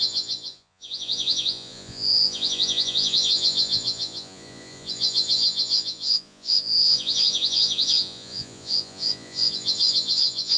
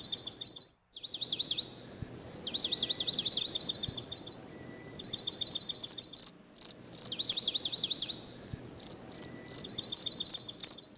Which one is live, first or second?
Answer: second